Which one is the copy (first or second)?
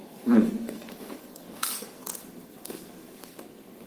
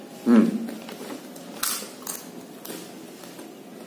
first